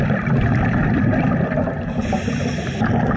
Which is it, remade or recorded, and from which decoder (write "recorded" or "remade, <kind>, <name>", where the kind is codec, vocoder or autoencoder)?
recorded